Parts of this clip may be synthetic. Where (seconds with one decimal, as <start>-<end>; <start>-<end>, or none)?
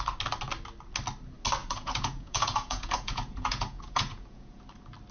1.6-4.6